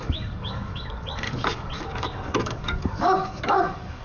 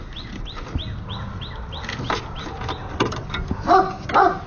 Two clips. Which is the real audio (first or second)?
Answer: second